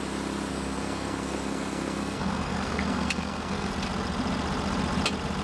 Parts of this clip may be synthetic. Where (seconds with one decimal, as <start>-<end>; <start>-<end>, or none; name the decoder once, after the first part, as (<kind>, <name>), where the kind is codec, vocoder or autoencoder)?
0.5-3.7 (codec, SNAC)

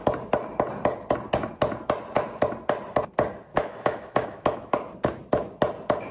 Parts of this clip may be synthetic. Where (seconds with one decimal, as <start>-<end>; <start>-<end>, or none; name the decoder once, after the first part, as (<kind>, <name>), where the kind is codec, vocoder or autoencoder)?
3.5-4.9 (autoencoder, DAC-VAE)

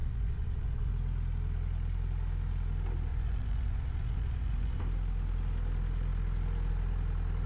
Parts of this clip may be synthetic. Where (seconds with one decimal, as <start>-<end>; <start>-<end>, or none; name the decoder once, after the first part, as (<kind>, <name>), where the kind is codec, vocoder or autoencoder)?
0.0-0.9 (vocoder, Vocos); 3.1-4.8

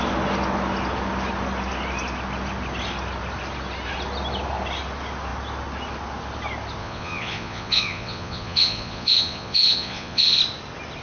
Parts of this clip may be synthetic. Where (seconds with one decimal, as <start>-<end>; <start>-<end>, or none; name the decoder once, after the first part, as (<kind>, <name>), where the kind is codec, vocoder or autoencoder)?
6.8-10.4 (vocoder, Vocos)

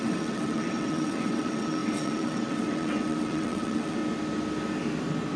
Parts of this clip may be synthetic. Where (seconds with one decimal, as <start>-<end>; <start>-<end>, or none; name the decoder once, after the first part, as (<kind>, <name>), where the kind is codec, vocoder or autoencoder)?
0.0-4.0 (vocoder, WaveNeXt)

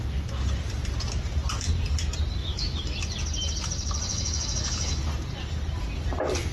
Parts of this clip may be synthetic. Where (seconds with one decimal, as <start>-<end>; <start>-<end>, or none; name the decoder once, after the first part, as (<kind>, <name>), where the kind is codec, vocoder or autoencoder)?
2.4-3.0 (autoencoder, DAC-VAE); 4.1-5.0

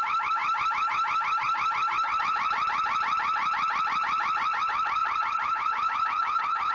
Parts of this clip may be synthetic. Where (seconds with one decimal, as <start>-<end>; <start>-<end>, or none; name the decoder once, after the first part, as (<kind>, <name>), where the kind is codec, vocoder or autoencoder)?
5.0-6.7 (vocoder, Vocos)

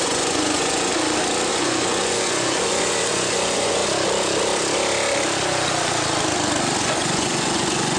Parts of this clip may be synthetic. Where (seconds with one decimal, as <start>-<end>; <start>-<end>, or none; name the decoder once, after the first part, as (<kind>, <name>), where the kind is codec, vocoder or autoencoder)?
0.0-0.9 (vocoder, Vocos); 1.5-3.8; 6.8-8.0